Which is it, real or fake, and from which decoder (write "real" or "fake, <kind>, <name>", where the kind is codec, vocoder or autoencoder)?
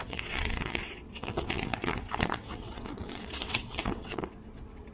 fake, vocoder, WaveNeXt